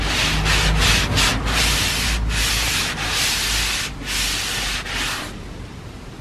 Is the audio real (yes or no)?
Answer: yes